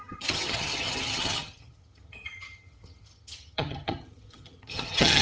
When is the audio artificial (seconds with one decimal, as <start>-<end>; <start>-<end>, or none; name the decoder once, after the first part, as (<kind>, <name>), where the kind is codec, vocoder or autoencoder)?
0.0-5.2 (vocoder, HiFi-GAN)